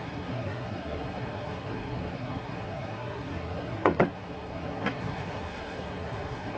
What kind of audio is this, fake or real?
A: fake